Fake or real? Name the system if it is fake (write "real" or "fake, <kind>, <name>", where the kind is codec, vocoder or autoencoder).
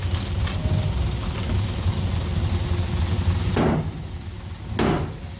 real